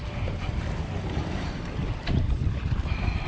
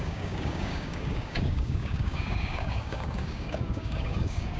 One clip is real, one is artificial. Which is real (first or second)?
first